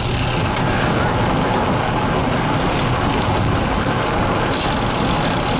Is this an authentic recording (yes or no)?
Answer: yes